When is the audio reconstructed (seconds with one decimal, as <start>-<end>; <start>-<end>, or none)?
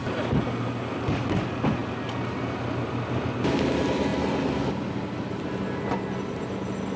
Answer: none